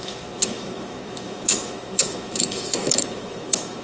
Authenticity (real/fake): fake